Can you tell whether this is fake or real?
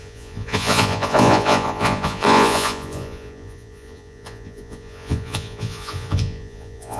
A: fake